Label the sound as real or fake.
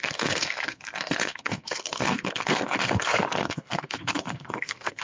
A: fake